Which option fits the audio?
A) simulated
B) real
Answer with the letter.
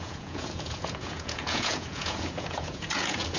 A